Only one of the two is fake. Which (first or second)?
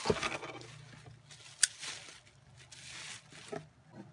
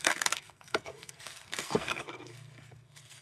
second